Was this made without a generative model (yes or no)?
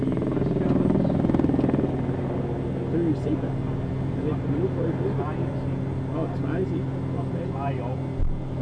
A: yes